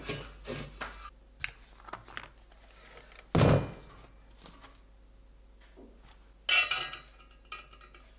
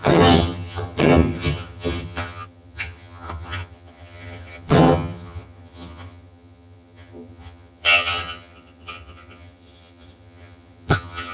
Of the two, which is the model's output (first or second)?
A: second